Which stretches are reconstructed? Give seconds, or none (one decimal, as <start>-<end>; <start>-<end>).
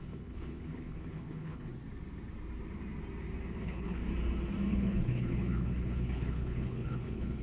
0.0-1.7; 3.6-4.0; 4.7-7.4